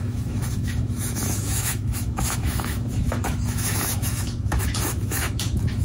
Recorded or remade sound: remade